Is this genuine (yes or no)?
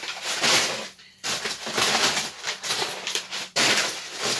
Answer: yes